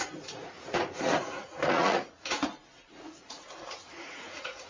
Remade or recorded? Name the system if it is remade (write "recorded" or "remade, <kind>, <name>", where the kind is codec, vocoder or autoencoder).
remade, vocoder, Vocos